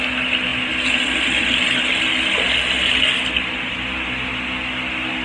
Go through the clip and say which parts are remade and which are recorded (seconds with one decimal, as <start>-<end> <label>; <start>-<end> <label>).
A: 0.0-5.2 recorded

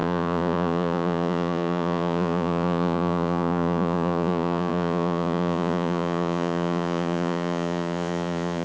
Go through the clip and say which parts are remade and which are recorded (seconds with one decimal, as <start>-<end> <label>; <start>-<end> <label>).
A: 0.0-8.6 remade

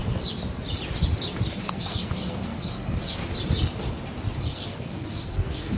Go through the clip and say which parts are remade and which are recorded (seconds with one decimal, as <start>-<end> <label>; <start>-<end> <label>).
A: 0.0-1.5 recorded; 1.5-3.2 remade; 3.2-4.4 recorded; 4.4-5.8 remade

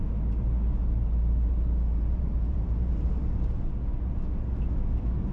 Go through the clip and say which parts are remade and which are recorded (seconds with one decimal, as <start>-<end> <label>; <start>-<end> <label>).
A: 0.0-1.9 recorded; 1.9-3.1 remade; 3.1-5.3 recorded

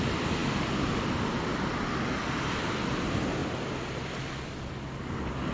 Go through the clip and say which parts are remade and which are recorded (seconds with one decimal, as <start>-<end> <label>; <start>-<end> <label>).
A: 0.0-5.5 recorded